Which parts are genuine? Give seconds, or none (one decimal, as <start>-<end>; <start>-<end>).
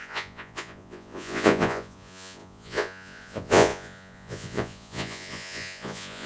none